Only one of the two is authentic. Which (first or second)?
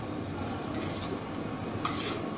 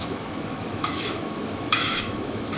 first